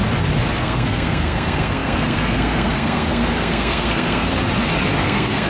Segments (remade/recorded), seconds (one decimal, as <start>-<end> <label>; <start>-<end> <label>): 0.0-0.6 recorded; 0.6-4.3 remade; 4.3-5.0 recorded; 5.0-5.5 remade